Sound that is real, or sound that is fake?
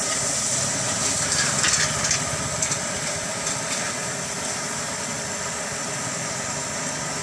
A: real